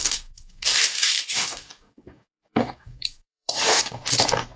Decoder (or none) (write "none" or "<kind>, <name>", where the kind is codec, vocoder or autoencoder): codec, DAC